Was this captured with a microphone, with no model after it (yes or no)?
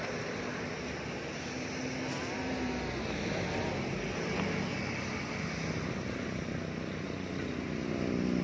yes